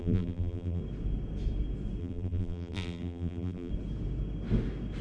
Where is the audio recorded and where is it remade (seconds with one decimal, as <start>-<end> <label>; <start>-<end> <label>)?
0.0-0.8 remade; 0.8-2.0 recorded; 2.0-3.7 remade; 3.7-5.0 recorded